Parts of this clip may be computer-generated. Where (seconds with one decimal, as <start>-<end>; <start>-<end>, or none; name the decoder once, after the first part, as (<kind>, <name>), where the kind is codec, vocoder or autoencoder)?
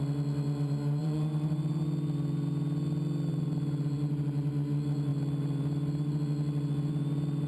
1.0-1.7 (vocoder, BigVGAN v2); 3.3-4.5